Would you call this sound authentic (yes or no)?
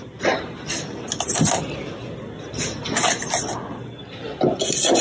yes